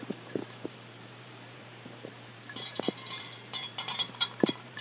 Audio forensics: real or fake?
fake